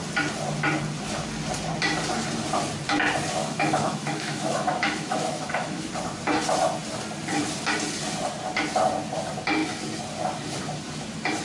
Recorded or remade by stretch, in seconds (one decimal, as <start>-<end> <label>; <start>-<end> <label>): 0.0-3.4 recorded; 3.4-5.9 remade; 5.9-11.4 recorded